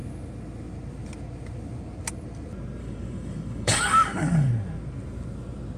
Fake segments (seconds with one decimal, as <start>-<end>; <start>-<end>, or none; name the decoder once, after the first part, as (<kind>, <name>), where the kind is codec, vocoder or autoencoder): 2.8-4.5 (codec, DAC)